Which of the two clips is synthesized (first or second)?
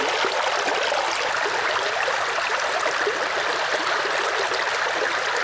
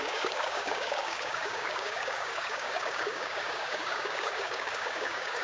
second